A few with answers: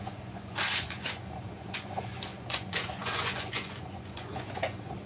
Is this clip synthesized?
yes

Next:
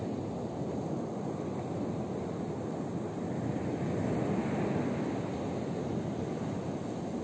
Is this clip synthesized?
no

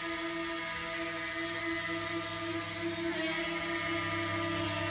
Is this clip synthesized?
no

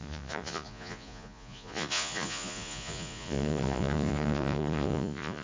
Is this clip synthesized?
yes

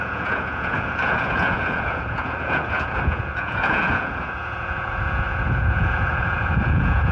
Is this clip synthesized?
yes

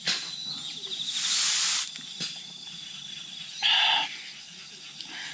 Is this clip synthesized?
no